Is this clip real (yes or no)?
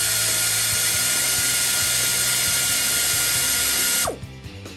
yes